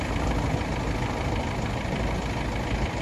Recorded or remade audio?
recorded